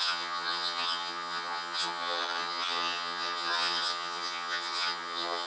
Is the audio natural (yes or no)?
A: no